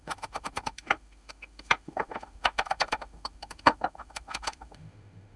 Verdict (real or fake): fake